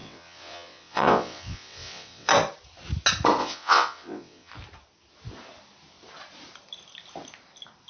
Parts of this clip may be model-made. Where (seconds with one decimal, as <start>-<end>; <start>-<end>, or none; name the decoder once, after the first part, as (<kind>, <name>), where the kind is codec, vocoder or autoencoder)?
0.0-2.3 (vocoder, WaveNeXt); 3.4-4.5